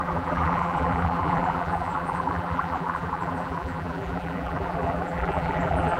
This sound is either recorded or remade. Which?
remade